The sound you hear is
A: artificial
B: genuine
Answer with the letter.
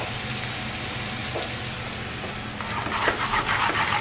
B